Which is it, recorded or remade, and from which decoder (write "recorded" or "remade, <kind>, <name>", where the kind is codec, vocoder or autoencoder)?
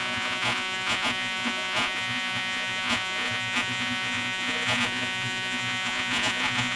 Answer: remade, vocoder, Vocos